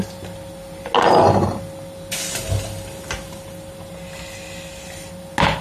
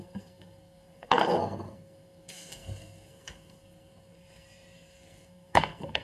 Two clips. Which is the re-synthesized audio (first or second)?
second